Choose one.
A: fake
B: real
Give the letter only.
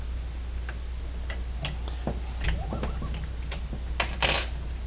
B